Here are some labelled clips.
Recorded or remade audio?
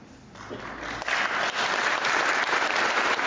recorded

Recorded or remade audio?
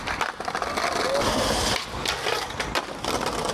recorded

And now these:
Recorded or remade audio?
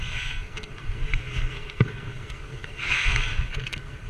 remade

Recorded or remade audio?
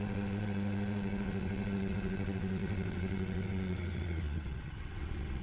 remade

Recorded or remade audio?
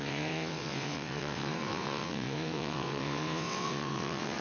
remade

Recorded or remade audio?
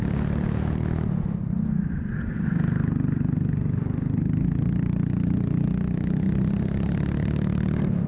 recorded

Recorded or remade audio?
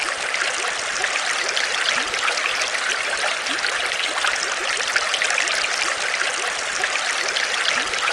recorded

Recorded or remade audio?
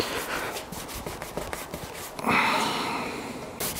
recorded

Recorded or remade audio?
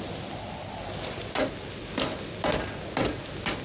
recorded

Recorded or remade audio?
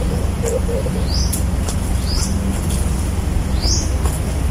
recorded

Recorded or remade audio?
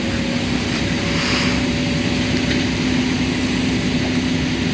recorded